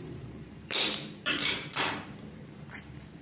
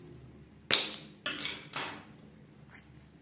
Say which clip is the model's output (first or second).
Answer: first